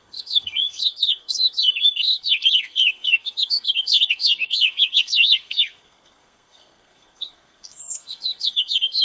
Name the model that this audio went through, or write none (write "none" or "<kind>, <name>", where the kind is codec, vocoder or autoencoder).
codec, SNAC